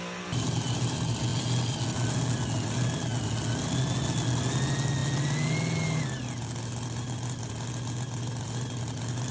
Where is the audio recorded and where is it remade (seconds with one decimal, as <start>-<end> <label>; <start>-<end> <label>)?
0.0-9.3 recorded